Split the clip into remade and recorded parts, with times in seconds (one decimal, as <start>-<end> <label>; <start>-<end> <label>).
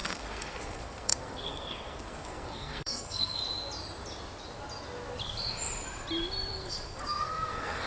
0.0-3.4 remade; 3.4-6.5 recorded; 6.5-7.9 remade